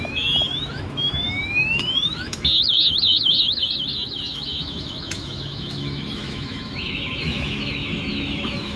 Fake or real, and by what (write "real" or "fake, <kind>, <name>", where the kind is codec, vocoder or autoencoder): fake, autoencoder, DAC-VAE